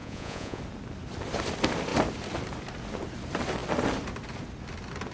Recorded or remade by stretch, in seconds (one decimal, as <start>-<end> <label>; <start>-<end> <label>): 0.0-0.6 remade; 0.6-5.1 recorded